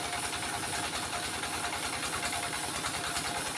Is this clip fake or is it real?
real